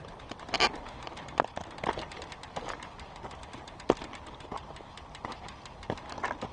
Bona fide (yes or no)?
yes